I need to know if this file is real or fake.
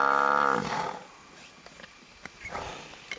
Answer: real